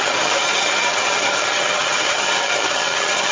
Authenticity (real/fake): fake